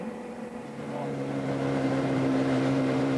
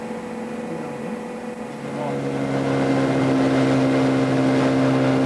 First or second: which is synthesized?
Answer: first